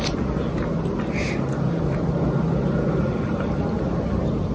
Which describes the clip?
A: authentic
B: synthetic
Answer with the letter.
A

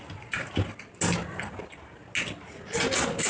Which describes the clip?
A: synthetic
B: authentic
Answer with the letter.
B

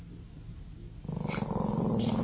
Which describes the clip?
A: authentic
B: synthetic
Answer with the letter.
A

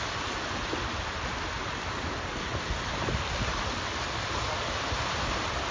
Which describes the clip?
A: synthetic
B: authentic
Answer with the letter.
B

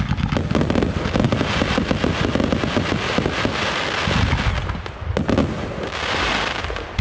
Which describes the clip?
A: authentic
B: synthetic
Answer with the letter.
A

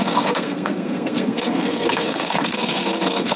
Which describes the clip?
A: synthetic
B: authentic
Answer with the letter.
A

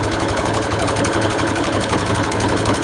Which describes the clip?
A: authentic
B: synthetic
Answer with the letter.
B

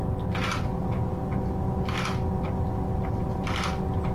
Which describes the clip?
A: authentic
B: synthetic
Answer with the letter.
A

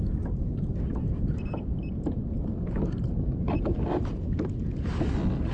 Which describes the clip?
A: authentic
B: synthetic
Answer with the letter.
A